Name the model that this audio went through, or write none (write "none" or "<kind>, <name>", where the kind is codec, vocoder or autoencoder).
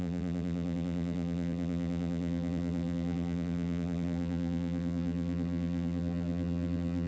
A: vocoder, BigVGAN v2